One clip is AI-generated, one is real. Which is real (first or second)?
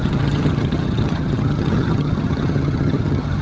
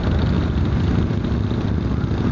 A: second